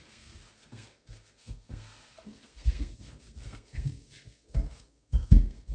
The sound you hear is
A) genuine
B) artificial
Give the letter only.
B